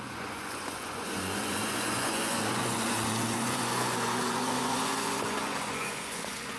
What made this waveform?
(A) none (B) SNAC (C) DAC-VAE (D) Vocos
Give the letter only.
D